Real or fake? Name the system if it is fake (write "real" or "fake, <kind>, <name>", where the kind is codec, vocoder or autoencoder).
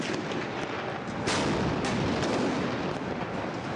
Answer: real